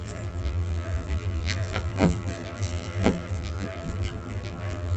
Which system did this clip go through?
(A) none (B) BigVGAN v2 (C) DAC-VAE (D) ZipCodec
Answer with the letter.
B